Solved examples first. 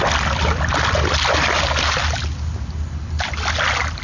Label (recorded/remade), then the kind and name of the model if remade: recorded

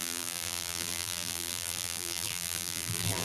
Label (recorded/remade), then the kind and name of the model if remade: remade, vocoder, BigVGAN v2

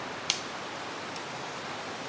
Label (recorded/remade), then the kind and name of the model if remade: recorded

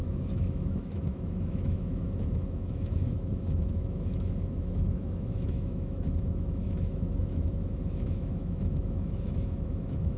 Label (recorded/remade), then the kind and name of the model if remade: remade, autoencoder, DAC-VAE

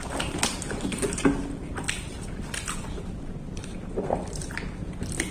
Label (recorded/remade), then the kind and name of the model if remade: recorded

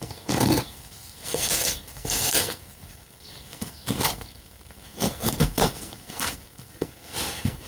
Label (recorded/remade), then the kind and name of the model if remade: remade, codec, SNAC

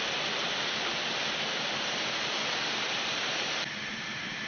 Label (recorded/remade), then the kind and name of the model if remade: remade, vocoder, BigVGAN v2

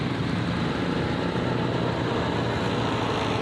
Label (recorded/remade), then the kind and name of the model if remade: recorded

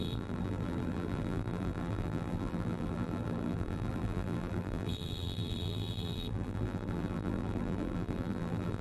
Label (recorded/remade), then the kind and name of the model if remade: remade, vocoder, BigVGAN v2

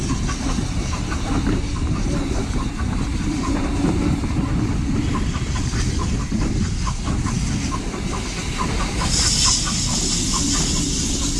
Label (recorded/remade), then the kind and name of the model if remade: recorded